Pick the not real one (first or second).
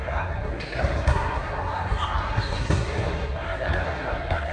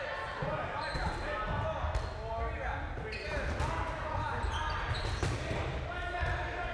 first